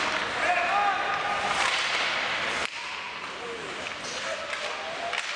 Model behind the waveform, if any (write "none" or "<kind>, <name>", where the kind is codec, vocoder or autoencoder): none